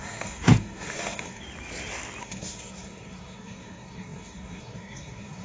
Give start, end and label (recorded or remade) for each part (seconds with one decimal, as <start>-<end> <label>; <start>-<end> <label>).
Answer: 0.0-1.4 remade; 1.4-2.2 recorded; 2.2-5.4 remade